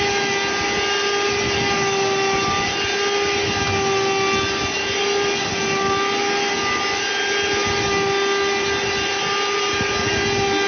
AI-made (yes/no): no